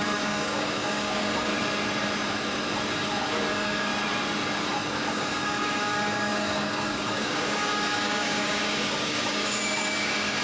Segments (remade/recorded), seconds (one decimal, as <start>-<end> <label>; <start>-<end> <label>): 0.0-1.5 remade; 1.5-3.5 recorded; 3.5-3.9 remade; 3.9-5.1 recorded; 5.1-10.4 remade